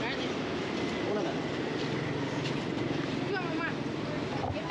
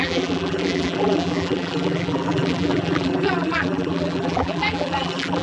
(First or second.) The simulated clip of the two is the second